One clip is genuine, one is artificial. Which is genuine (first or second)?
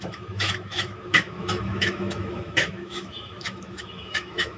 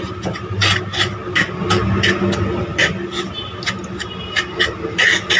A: second